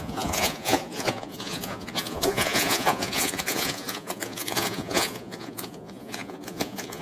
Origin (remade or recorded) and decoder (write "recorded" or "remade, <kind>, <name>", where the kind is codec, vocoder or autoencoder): remade, vocoder, Vocos